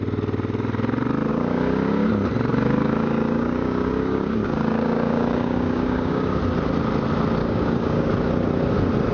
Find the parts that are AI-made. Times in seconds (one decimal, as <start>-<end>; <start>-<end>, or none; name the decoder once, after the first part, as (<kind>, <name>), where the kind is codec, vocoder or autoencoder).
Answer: 1.3-2.1 (codec, DAC); 2.5-6.4; 7.4-8.1